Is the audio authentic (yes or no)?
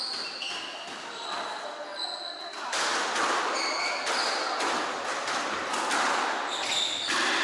yes